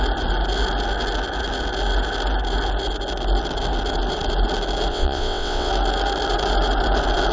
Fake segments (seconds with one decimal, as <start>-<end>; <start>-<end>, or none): 4.9-5.7